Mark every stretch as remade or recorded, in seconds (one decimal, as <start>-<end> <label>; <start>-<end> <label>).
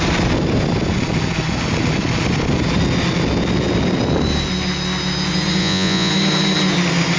0.0-5.6 recorded; 5.6-6.1 remade; 6.1-7.2 recorded